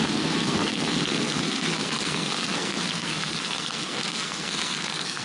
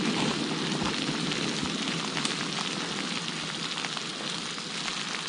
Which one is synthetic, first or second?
first